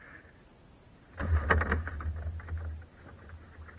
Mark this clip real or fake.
real